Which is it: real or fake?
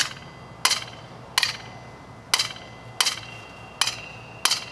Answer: real